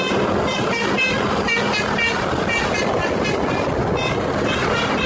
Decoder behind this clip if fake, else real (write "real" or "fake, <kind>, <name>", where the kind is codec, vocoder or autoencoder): real